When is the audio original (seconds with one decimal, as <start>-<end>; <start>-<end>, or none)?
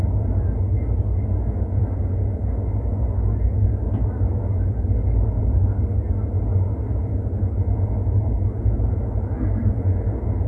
0.0-10.5